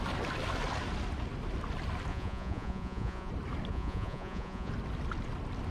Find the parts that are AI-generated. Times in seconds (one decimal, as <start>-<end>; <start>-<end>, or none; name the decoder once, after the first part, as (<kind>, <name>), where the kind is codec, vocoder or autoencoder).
2.1-3.3 (vocoder, Vocos); 3.7-4.7